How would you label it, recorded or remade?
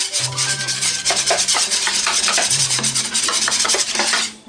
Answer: remade